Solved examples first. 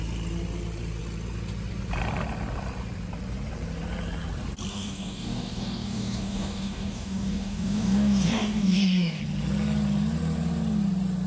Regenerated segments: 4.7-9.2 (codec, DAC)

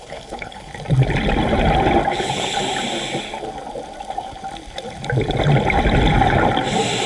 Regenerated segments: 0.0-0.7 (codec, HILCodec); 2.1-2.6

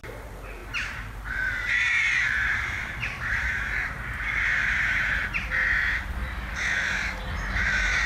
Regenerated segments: 0.6-5.5 (vocoder, BigVGAN v2)

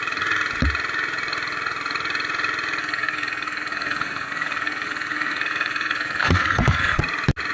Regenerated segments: 2.8-7.0 (codec, SNAC)

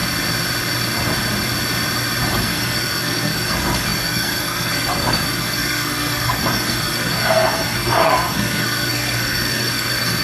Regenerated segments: 2.3-10.2 (codec, SNAC)

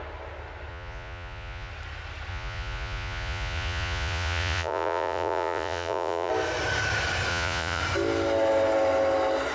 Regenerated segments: 0.7-1.7 (vocoder, Vocos); 2.3-6.3; 7.3-7.8